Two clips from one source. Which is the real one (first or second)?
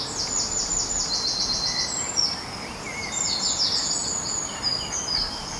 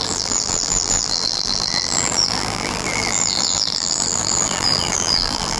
first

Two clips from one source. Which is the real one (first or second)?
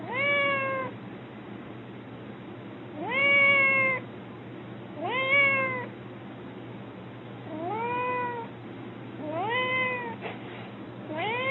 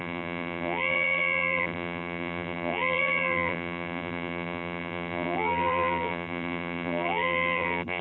first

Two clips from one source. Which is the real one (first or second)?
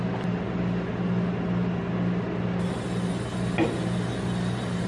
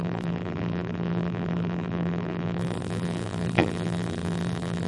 first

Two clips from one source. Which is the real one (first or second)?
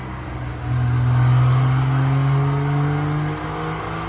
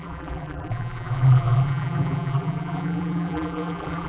first